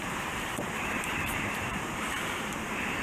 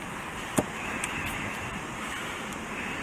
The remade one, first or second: first